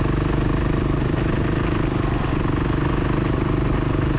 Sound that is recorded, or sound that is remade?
recorded